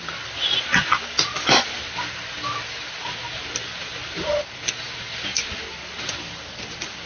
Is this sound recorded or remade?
recorded